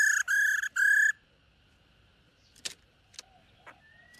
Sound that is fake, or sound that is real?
real